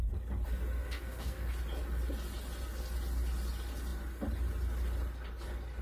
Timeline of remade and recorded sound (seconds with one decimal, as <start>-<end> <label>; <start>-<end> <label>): 0.0-0.8 recorded; 0.8-1.5 remade; 1.5-5.8 recorded